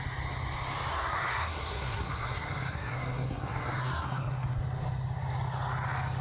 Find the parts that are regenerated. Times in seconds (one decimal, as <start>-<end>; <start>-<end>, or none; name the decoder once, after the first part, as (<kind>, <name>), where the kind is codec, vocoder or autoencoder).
0.9-4.6 (codec, SNAC)